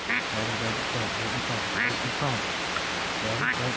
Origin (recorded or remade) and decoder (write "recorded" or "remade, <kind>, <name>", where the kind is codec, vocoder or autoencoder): recorded